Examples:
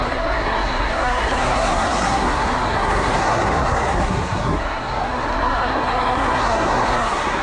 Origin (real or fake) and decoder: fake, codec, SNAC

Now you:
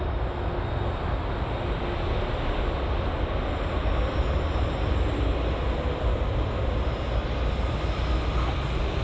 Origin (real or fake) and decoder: real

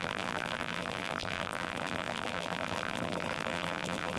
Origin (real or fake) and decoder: fake, vocoder, BigVGAN v2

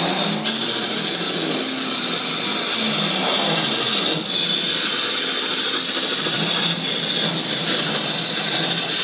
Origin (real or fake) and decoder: real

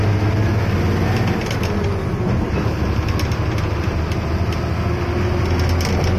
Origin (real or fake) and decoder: real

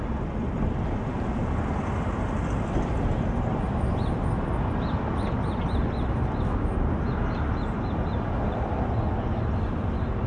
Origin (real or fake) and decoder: real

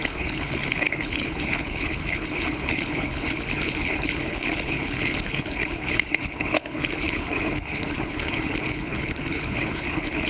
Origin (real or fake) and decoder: fake, codec, HILCodec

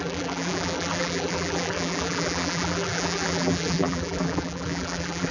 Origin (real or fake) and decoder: fake, vocoder, BigVGAN v2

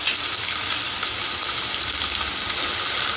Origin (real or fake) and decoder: real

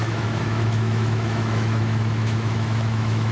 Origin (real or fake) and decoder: fake, autoencoder, DAC-VAE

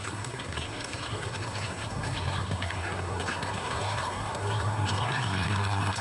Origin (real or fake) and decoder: fake, codec, SNAC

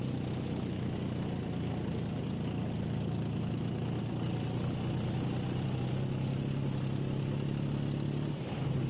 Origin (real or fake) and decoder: real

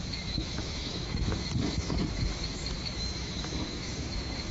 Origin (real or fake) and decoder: fake, autoencoder, DAC-VAE